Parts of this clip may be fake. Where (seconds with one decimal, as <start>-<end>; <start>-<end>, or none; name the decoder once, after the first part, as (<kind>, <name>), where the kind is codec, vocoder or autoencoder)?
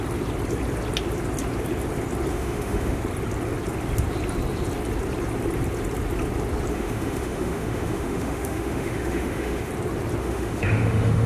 2.3-3.0 (autoencoder, DAC-VAE); 6.7-9.7; 10.2-11.3